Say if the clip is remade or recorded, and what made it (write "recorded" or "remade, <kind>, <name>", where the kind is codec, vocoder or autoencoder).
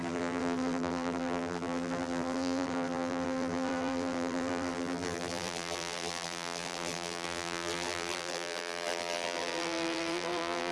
remade, vocoder, BigVGAN v2